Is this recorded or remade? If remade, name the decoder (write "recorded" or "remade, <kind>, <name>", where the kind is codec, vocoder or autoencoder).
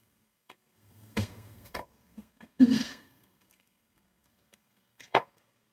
remade, codec, SNAC